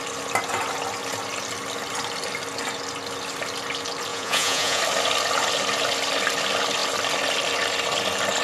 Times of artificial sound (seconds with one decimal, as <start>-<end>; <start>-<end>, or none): 4.1-4.8